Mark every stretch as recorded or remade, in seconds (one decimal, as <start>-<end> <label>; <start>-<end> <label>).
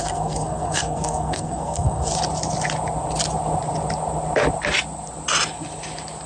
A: 0.0-2.1 remade; 2.1-6.3 recorded